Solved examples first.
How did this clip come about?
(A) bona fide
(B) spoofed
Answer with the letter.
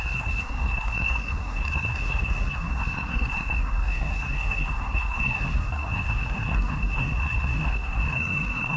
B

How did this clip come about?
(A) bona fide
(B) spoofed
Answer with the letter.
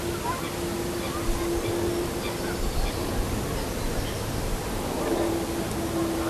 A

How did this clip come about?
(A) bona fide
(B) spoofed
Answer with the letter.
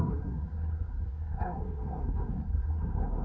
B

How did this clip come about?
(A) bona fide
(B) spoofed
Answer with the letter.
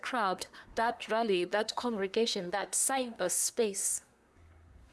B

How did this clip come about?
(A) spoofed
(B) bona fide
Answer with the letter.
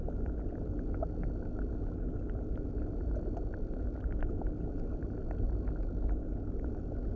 B